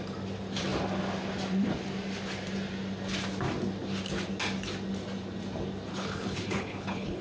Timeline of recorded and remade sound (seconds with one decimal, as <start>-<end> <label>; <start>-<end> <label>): 0.0-5.9 recorded; 5.9-7.2 remade